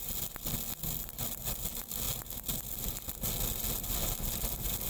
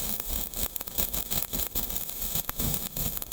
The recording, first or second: first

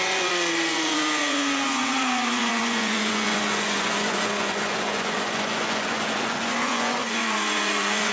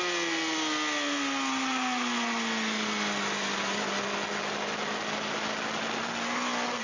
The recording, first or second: second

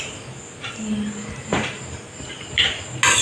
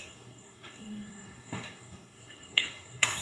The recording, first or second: first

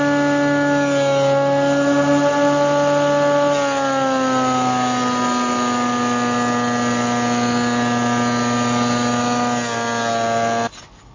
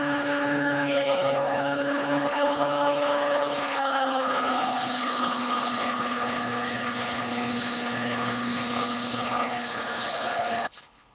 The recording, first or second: first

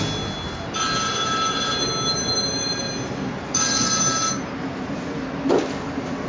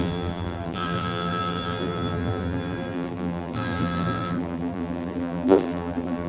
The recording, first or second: first